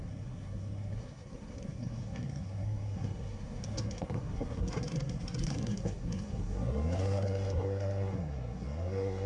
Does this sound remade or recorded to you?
remade